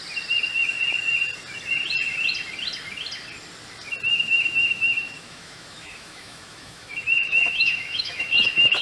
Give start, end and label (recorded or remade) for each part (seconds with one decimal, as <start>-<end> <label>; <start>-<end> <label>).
0.0-4.1 recorded; 4.1-8.8 remade